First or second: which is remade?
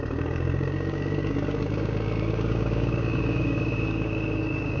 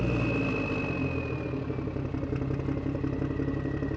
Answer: first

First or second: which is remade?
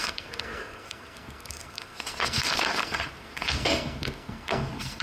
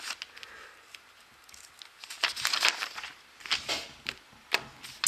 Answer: first